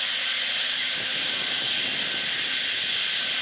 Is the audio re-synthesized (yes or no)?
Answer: no